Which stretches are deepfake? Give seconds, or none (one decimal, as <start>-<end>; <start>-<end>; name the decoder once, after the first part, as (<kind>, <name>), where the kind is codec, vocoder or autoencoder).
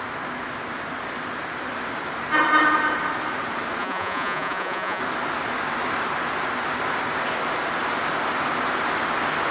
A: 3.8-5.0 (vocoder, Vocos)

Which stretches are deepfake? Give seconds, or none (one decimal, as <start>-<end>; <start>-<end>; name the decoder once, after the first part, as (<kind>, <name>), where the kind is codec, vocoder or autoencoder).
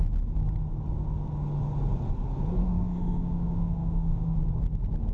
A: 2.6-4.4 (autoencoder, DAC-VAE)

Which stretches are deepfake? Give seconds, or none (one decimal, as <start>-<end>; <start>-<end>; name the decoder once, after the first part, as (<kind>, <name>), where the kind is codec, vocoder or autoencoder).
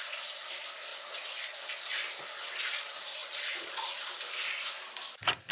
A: 3.2-3.9 (vocoder, Vocos)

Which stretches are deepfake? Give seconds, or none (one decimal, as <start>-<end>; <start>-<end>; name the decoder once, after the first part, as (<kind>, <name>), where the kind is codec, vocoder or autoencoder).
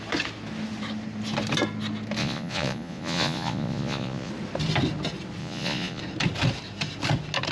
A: 2.2-4.3 (vocoder, Vocos); 5.4-6.0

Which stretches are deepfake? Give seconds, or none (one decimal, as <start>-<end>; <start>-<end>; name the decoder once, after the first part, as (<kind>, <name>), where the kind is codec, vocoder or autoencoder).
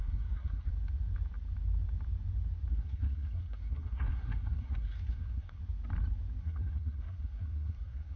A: 0.0-0.7 (codec, SNAC); 2.7-5.6; 6.4-8.2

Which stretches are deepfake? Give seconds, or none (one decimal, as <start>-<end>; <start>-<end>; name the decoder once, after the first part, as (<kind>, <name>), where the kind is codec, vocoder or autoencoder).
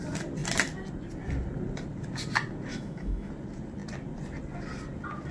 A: 2.7-3.3 (autoencoder, DAC-VAE)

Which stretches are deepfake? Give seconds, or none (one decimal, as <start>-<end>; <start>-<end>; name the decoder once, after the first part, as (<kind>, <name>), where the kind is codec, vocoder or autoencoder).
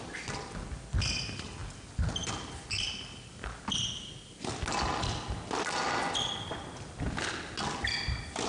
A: none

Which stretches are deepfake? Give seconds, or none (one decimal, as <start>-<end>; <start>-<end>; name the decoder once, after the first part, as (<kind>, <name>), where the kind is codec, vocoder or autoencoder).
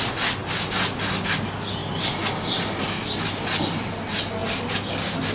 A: none